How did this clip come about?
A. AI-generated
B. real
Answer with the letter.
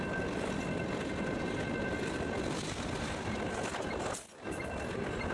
B